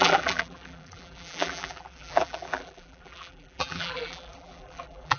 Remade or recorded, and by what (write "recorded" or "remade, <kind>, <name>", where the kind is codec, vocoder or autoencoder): remade, vocoder, BigVGAN v2